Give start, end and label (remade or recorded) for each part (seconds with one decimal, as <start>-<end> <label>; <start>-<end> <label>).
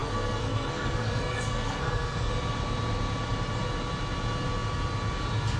0.0-2.3 remade; 2.3-5.6 recorded